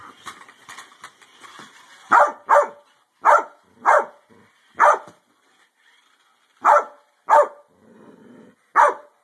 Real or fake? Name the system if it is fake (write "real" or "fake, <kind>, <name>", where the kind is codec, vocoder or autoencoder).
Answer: real